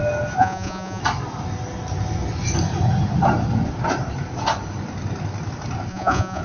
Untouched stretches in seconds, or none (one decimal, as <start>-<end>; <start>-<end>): 0.0-0.4; 1.0-5.9